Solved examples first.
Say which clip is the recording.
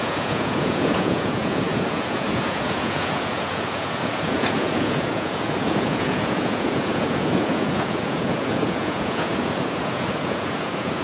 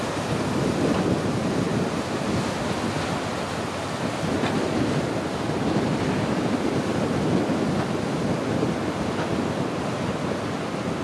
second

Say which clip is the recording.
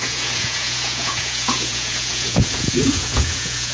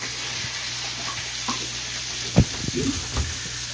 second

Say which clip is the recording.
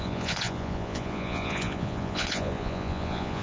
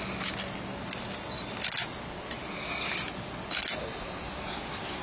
second